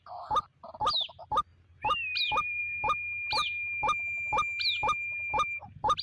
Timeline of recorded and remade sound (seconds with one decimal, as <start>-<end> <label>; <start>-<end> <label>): 0.0-6.0 recorded